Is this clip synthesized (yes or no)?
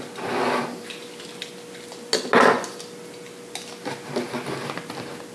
no